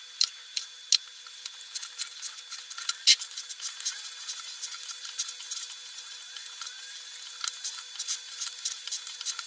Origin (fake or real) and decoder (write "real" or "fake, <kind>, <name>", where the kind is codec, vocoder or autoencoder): real